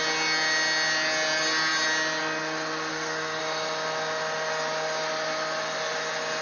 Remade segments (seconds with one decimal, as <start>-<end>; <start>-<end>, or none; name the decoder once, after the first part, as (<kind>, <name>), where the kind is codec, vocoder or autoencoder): 2.9-3.4 (codec, SNAC)

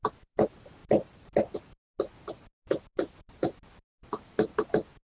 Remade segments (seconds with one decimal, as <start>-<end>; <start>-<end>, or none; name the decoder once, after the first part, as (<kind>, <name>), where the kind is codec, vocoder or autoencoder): none

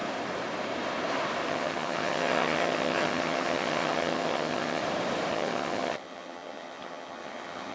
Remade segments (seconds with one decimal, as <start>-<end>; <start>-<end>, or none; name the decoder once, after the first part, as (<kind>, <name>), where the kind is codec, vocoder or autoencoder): 1.5-4.8 (vocoder, HiFi-GAN); 5.3-7.7

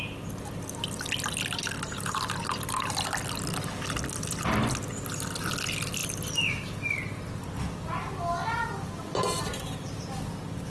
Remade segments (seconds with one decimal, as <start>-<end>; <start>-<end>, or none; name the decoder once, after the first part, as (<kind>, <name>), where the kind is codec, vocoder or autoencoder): none

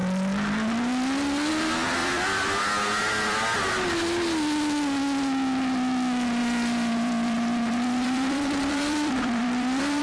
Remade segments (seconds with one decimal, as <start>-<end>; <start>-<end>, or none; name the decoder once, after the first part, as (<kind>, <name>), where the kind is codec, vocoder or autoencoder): 2.0-3.7 (vocoder, BigVGAN v2); 6.4-10.0

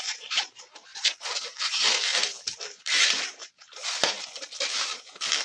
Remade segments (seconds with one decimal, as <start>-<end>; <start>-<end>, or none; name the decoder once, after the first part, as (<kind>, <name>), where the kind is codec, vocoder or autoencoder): 0.0-0.9 (vocoder, BigVGAN v2); 1.5-5.4

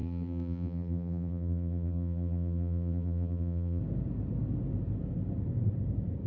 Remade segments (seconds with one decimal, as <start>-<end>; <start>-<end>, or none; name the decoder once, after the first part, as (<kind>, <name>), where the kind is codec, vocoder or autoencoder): 0.0-3.8 (vocoder, BigVGAN v2)

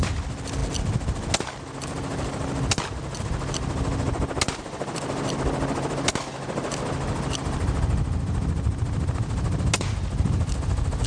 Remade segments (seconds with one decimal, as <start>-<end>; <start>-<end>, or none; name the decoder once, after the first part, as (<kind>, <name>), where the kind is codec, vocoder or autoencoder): none